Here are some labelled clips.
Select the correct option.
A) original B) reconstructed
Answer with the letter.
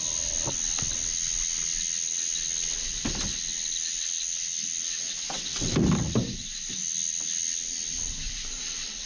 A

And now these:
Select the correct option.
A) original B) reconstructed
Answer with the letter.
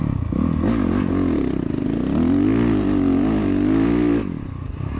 A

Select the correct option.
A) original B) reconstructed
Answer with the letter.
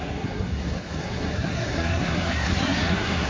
B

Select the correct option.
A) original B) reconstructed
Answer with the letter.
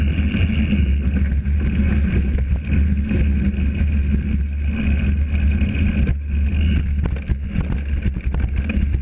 A